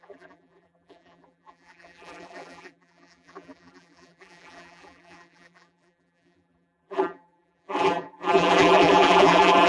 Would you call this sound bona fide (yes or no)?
no